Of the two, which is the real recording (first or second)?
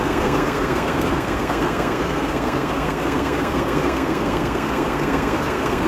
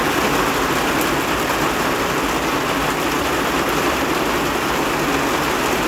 second